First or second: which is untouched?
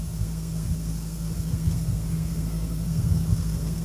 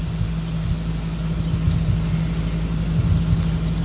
second